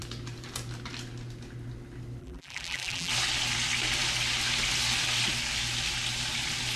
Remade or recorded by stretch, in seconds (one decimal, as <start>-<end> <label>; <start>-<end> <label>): 0.0-2.2 recorded; 2.2-3.1 remade; 3.1-6.8 recorded